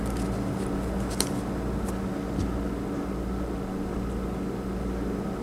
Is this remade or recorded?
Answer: recorded